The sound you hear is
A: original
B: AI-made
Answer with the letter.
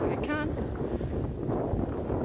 A